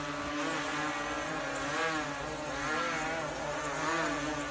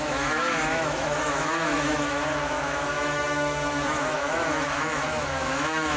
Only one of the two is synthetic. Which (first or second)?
second